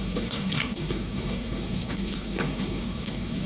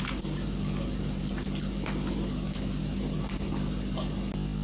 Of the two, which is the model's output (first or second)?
first